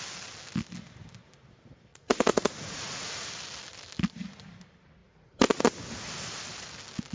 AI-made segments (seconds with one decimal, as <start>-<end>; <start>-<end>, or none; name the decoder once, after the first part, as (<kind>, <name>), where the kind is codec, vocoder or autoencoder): 1.9-3.3 (vocoder, Vocos); 5.0-5.6